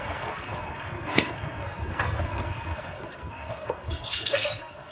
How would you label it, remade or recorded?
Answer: remade